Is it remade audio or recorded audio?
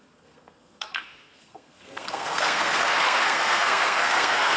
remade